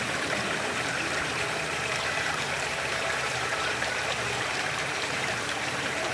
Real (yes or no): no